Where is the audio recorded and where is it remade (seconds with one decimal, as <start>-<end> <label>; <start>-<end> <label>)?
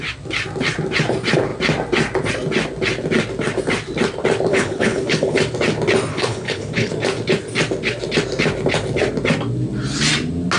0.0-4.5 recorded; 4.5-5.4 remade; 5.4-6.1 recorded; 6.1-6.9 remade; 6.9-10.6 recorded